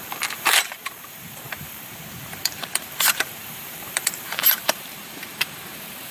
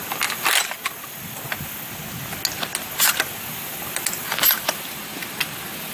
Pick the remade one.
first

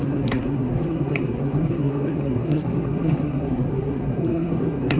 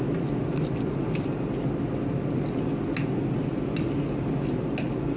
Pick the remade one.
first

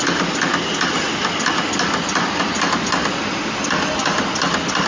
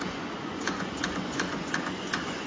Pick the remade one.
second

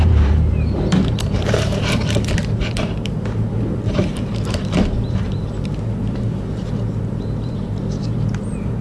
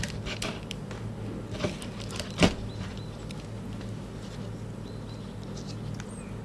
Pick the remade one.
first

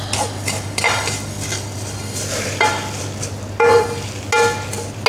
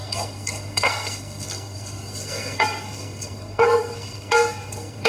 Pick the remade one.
second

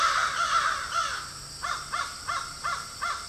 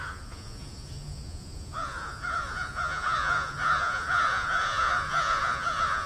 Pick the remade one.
second